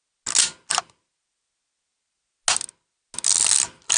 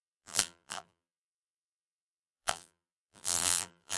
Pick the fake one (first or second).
second